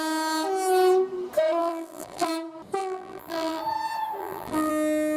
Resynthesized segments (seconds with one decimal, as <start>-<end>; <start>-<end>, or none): 1.6-2.3; 2.8-3.6; 4.2-4.7